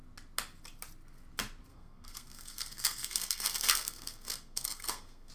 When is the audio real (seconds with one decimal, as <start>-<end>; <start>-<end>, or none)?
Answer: 0.0-1.7